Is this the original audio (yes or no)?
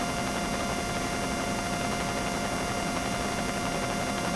yes